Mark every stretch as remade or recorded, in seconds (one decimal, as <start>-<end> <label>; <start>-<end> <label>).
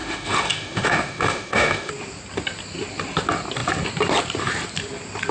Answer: 0.0-1.9 remade; 1.9-5.3 recorded